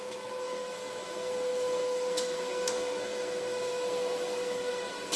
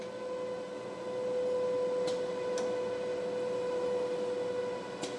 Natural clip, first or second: second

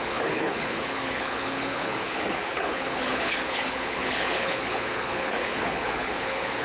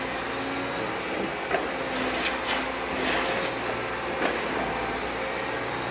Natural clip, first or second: second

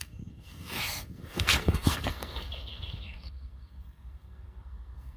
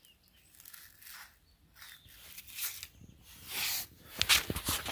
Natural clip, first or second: second